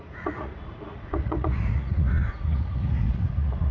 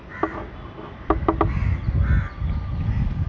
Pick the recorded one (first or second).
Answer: second